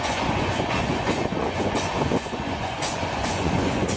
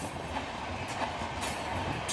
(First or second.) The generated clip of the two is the first